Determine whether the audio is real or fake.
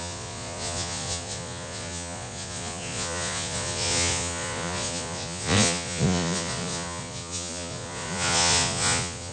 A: fake